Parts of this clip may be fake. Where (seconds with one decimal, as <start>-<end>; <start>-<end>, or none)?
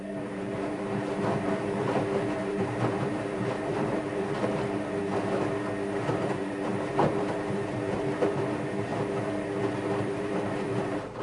0.0-5.0; 6.1-8.9; 10.0-11.2